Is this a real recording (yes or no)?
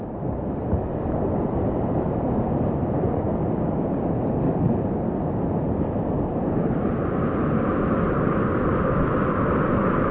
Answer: yes